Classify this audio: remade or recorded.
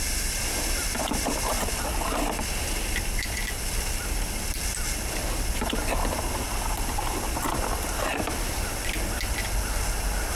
recorded